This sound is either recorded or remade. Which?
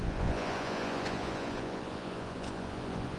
remade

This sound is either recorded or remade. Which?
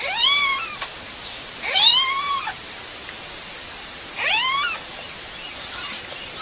remade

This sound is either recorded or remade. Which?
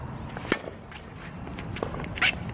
recorded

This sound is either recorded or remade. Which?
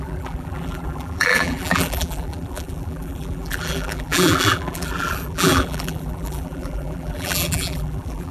remade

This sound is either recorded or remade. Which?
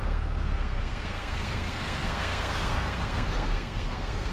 remade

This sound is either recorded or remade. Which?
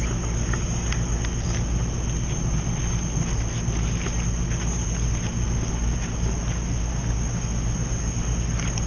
recorded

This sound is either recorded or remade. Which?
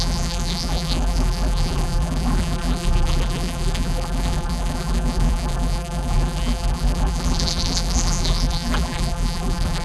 remade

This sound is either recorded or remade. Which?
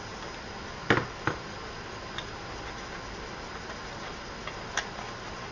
recorded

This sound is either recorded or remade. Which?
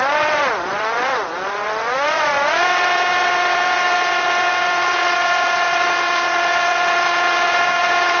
remade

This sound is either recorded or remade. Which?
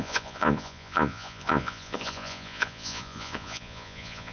remade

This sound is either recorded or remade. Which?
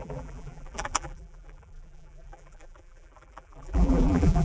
remade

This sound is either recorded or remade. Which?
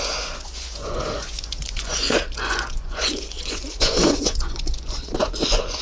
remade